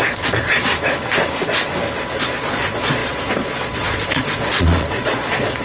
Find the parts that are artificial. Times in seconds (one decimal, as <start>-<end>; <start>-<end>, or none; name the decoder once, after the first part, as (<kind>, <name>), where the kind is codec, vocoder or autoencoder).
0.0-0.7 (vocoder, Vocos); 2.0-5.6